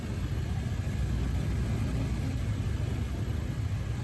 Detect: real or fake real